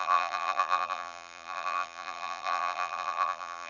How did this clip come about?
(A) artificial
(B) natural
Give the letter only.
A